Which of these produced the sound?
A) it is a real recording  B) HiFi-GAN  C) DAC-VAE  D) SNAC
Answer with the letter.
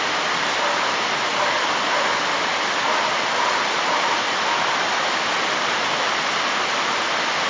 A